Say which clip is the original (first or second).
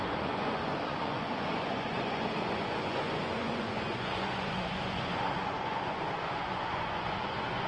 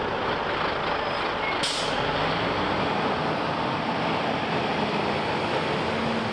second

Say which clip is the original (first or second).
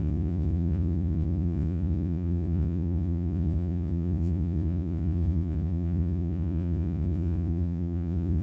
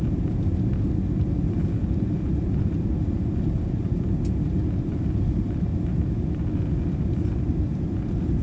second